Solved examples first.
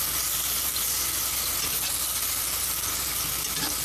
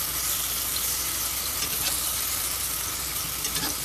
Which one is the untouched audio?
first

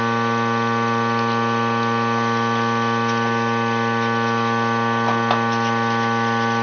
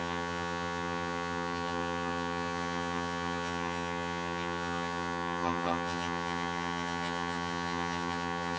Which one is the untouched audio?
first